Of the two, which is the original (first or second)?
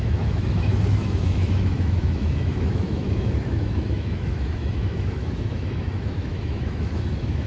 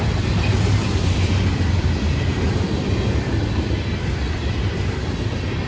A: second